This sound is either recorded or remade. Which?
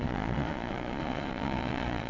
remade